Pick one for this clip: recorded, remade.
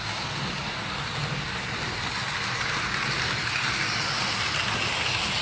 recorded